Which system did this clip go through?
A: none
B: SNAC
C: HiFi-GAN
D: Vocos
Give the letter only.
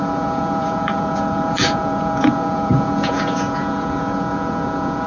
D